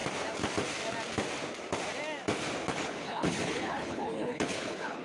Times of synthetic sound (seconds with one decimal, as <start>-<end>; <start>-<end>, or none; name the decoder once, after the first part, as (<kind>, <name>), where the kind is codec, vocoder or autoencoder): 2.7-5.0 (codec, HILCodec)